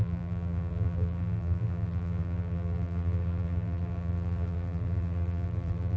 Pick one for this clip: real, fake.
fake